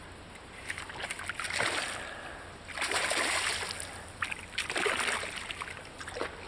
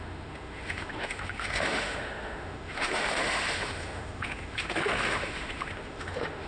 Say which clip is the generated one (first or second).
second